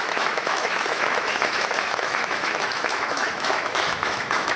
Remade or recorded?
remade